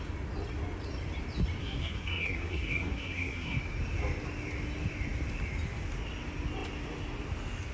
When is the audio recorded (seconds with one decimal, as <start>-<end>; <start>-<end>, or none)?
0.0-1.6; 3.6-7.7